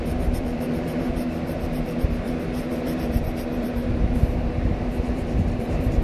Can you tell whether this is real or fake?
fake